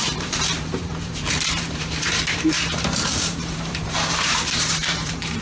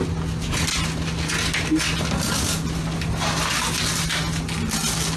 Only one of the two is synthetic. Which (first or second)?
first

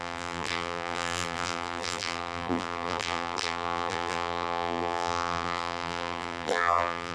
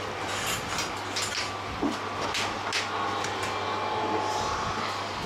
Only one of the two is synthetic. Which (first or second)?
first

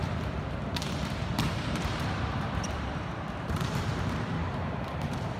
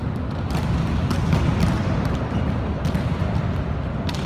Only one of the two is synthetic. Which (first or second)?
first